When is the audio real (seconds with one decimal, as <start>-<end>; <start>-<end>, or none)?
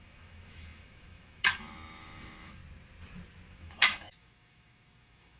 2.6-3.5